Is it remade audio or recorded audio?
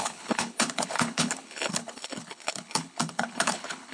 remade